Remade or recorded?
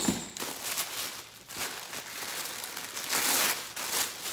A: recorded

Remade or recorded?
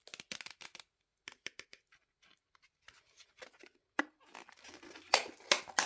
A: recorded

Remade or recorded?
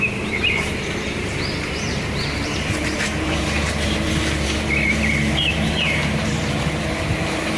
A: remade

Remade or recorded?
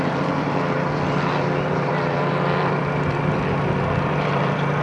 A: remade